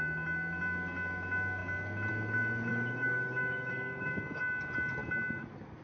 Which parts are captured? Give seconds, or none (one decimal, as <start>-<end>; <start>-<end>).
0.0-2.7; 4.4-5.8